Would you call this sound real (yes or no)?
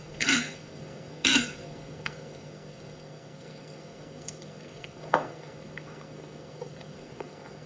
no